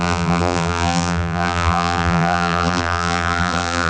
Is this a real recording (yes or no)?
no